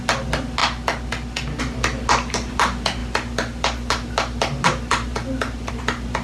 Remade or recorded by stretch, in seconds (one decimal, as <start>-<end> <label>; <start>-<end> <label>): 0.0-6.2 recorded